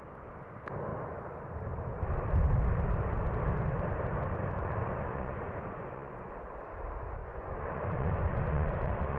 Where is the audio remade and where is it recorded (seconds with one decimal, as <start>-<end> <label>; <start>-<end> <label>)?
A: 0.0-4.6 recorded; 4.6-6.3 remade; 6.3-7.2 recorded; 7.2-9.2 remade